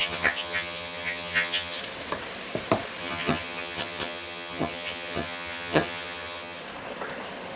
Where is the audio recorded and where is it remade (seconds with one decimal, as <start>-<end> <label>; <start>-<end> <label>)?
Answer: 0.0-1.8 remade; 1.8-3.0 recorded; 3.0-6.6 remade; 6.6-7.6 recorded